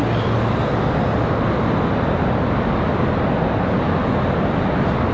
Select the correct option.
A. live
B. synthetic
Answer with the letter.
A